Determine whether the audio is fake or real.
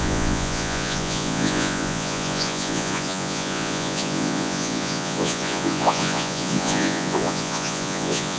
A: fake